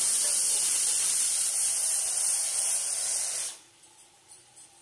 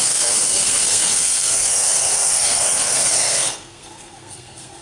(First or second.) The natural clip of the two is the first